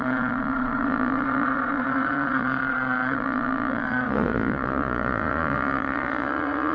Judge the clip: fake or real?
fake